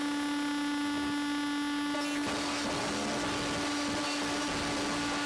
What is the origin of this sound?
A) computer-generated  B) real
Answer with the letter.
B